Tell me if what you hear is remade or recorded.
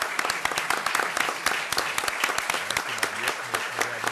recorded